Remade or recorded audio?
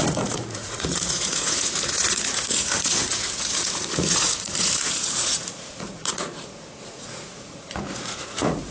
remade